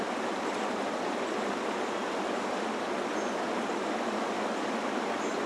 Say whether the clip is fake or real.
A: fake